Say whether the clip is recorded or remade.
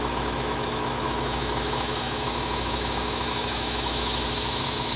remade